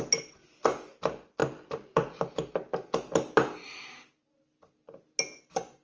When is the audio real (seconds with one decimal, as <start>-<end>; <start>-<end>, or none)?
0.0-5.8